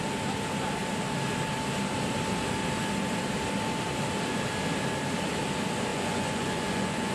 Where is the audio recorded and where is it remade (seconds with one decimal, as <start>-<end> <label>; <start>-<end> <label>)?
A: 0.0-5.9 recorded; 5.9-7.1 remade